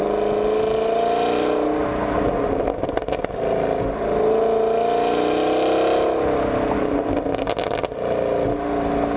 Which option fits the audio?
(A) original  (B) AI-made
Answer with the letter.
A